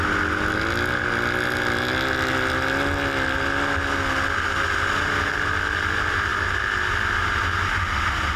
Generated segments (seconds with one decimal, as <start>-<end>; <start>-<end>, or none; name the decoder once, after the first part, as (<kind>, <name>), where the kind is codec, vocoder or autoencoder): none